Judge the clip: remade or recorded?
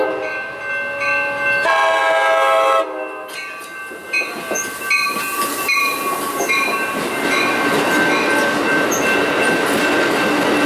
recorded